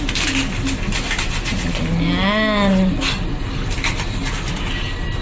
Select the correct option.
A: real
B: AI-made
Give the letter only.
A